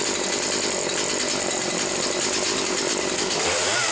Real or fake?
real